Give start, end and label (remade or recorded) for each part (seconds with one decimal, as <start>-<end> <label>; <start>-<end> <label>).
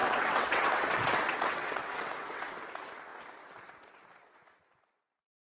0.0-2.4 remade; 2.4-5.5 recorded